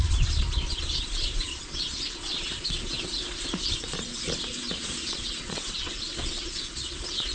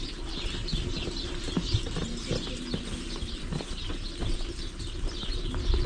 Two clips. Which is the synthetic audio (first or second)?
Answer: first